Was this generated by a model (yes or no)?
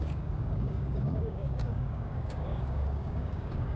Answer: yes